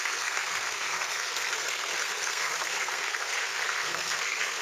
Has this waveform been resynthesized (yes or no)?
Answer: yes